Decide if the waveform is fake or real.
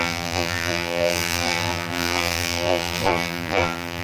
fake